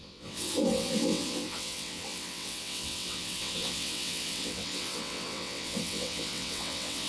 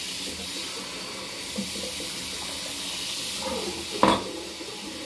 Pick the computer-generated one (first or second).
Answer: first